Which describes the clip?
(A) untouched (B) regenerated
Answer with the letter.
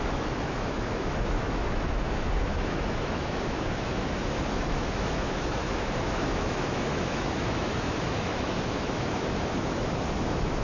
B